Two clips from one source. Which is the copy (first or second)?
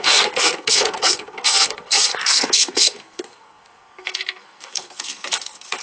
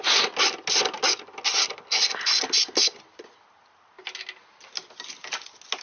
first